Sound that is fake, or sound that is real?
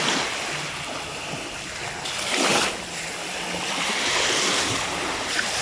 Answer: real